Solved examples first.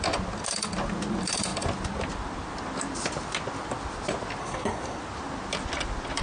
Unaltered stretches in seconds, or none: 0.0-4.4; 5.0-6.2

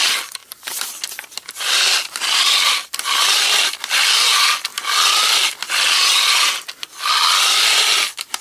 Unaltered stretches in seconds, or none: 0.0-8.4